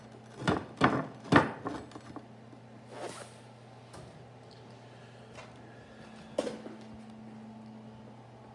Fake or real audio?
real